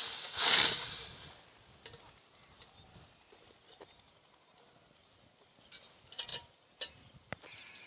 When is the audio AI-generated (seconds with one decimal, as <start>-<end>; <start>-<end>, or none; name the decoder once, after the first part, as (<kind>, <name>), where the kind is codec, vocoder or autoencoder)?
none